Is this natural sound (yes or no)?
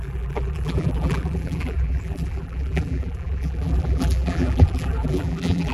no